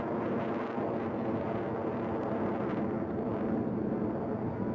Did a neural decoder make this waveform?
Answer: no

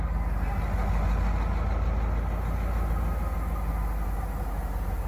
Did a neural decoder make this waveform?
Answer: no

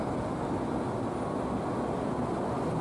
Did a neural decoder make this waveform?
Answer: no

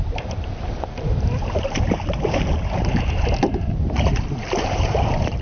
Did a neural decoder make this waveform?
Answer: yes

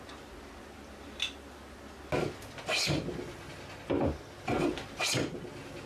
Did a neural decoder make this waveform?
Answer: no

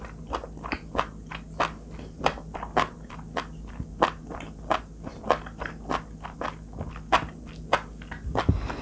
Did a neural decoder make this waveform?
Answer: no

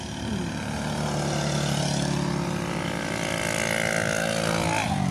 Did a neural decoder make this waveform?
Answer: no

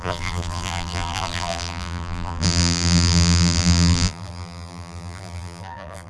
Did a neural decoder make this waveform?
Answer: yes